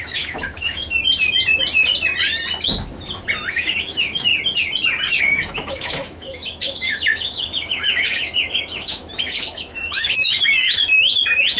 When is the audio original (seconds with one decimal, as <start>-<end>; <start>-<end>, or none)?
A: 1.0-3.5; 4.3-5.2